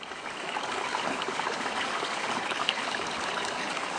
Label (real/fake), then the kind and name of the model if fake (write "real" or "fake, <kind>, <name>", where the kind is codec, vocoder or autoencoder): fake, codec, DAC